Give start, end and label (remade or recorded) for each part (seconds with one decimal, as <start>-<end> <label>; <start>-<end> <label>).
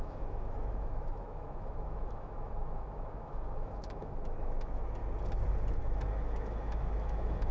0.0-5.0 remade; 5.0-5.8 recorded; 5.8-7.5 remade